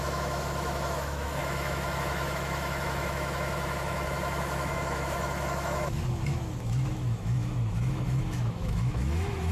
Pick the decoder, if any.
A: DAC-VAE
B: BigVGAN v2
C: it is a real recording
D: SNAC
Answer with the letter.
A